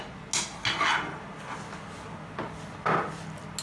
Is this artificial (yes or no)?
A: no